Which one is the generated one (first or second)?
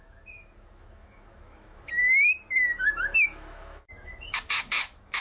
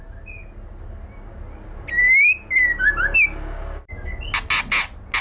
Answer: first